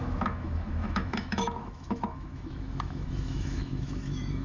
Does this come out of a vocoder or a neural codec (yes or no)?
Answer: yes